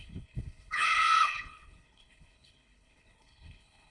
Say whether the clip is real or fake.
fake